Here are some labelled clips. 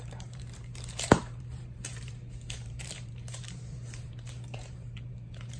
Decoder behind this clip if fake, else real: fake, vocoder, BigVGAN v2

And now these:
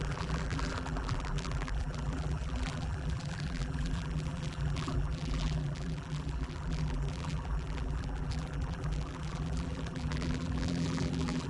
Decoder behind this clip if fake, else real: fake, vocoder, BigVGAN v2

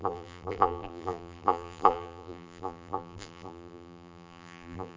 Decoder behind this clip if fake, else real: fake, vocoder, BigVGAN v2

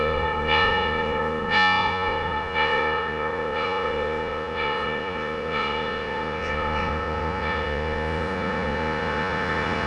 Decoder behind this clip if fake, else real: fake, vocoder, Vocos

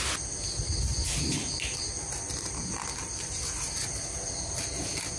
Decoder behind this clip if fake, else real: real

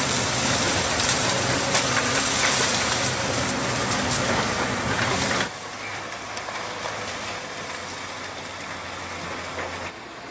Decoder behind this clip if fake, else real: real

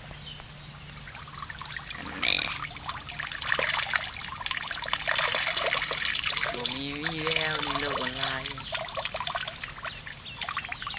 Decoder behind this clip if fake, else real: real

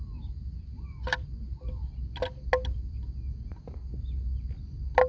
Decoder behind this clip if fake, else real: real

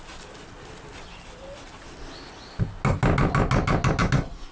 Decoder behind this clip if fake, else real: real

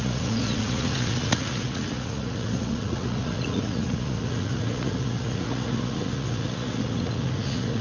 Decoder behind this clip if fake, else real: fake, vocoder, Vocos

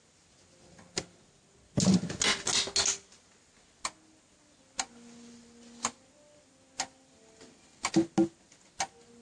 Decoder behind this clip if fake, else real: real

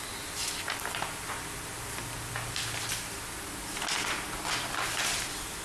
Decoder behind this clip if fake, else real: real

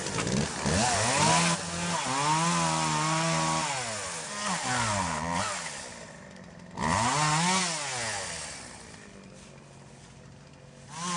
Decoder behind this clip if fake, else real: real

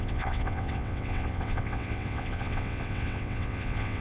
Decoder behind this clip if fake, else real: fake, vocoder, WaveNeXt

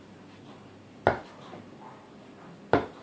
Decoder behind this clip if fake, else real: real